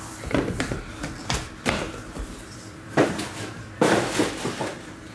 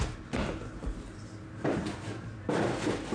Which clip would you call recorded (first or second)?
second